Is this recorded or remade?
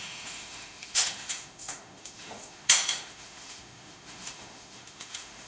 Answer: remade